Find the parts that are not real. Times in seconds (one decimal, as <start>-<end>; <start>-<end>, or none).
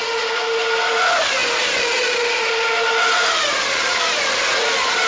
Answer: none